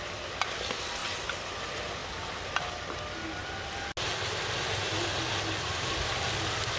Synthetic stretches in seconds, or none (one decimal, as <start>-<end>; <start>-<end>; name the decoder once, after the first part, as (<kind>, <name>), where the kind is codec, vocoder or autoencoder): 2.0-2.5 (vocoder, BigVGAN v2)